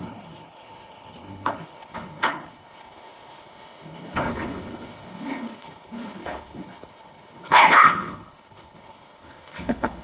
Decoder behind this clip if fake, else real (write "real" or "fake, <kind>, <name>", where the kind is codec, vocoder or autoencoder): fake, codec, HILCodec